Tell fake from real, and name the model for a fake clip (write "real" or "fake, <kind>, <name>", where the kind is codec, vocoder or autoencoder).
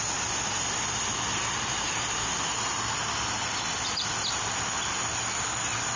real